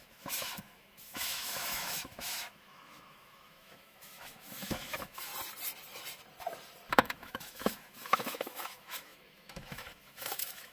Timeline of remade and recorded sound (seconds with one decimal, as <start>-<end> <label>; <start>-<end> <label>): 0.0-5.3 remade; 5.3-6.9 recorded; 6.9-10.7 remade